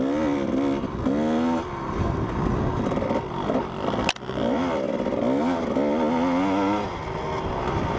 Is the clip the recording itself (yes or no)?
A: yes